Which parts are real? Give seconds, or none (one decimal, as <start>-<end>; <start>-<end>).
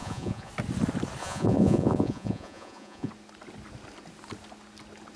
0.5-1.2; 3.1-5.2